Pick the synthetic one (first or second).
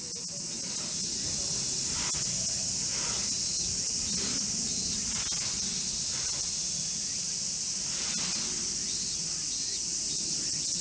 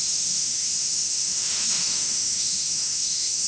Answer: second